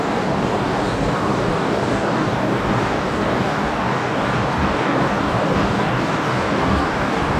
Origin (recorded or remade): remade